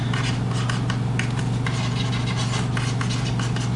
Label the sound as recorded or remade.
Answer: recorded